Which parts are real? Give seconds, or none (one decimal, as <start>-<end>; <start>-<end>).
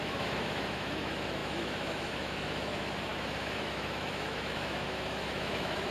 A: none